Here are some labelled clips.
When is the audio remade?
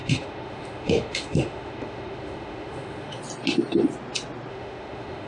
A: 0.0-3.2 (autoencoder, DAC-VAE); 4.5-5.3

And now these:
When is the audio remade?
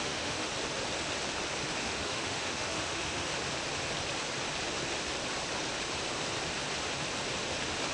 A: 0.0-0.5 (autoencoder, DAC-VAE); 1.8-3.3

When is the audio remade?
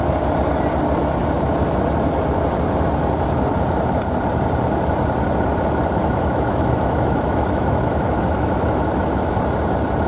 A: 6.0-9.3 (autoencoder, DAC-VAE)